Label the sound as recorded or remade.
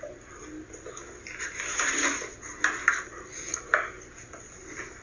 recorded